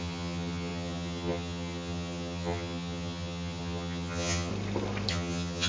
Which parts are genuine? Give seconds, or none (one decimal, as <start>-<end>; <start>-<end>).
4.5-5.1